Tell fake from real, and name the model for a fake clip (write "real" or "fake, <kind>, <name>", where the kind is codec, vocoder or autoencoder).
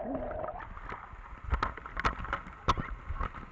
real